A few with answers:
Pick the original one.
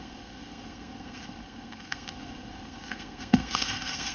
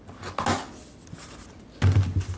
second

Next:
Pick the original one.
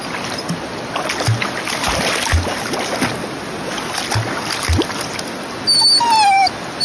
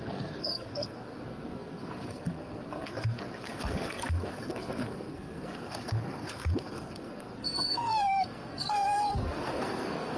first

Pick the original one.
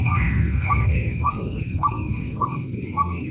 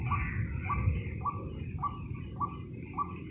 second